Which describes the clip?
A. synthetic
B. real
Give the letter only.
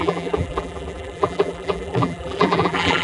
A